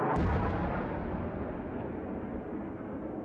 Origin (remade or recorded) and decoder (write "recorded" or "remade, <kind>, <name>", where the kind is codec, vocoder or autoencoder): recorded